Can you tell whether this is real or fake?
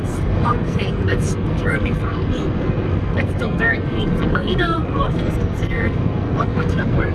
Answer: fake